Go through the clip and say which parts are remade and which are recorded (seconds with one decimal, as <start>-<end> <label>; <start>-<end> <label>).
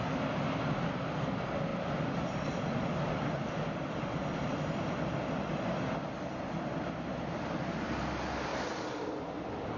0.0-1.7 recorded; 1.7-5.5 remade; 5.5-6.3 recorded; 6.3-8.0 remade; 8.0-9.8 recorded